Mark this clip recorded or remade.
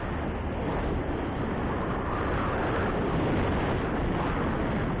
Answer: recorded